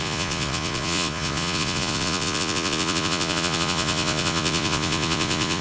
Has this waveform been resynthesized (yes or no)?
yes